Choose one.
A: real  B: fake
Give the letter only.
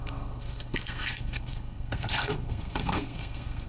B